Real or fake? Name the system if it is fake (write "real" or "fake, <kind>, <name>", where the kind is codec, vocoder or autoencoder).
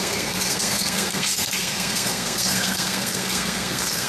fake, codec, SNAC